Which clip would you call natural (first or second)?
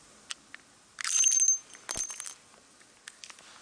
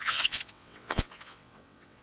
first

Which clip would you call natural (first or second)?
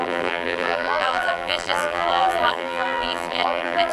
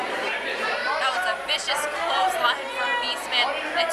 second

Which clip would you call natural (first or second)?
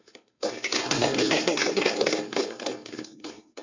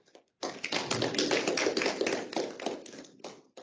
second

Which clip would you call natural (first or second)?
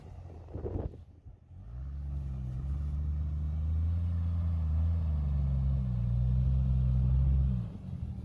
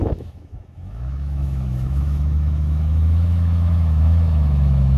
first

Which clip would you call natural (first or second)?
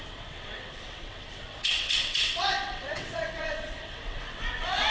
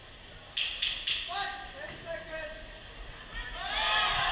second